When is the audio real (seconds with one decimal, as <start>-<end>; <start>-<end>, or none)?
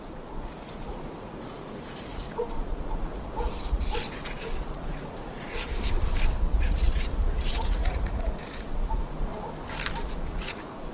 5.7-6.4; 9.3-10.0